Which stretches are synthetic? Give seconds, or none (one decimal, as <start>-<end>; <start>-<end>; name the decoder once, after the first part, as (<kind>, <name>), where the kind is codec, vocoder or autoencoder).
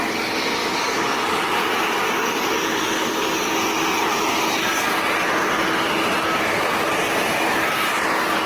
0.6-3.6 (codec, DAC)